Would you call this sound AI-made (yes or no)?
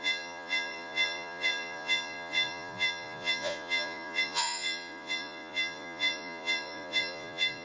yes